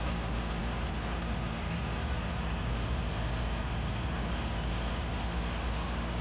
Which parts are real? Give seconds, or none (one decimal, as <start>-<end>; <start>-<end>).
0.0-6.2

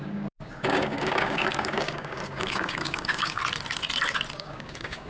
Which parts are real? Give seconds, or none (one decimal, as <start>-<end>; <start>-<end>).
3.4-4.4

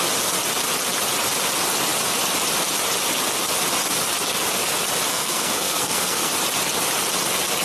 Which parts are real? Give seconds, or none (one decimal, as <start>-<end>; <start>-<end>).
0.0-5.1; 6.3-7.6

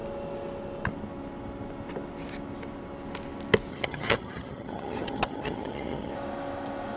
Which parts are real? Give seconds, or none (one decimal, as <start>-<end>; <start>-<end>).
0.0-3.7; 6.1-7.0